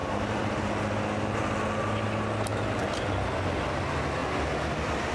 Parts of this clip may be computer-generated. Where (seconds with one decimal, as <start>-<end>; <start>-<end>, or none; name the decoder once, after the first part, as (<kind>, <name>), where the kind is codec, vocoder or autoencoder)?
0.0-1.0 (vocoder, BigVGAN v2); 2.5-3.8